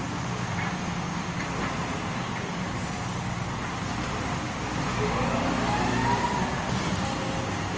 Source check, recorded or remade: recorded